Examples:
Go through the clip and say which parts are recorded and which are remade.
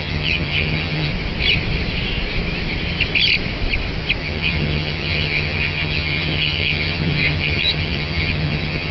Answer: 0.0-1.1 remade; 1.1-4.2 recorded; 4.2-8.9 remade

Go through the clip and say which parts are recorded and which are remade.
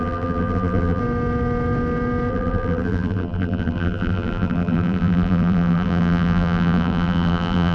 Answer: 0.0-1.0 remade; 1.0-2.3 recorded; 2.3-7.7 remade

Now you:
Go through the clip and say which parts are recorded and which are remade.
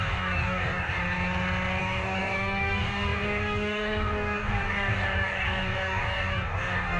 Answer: 0.0-1.0 remade; 1.0-1.8 recorded; 1.8-7.0 remade